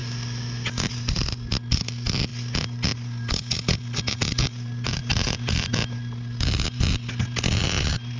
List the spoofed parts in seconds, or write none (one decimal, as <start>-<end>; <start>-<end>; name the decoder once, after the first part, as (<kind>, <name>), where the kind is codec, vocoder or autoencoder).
none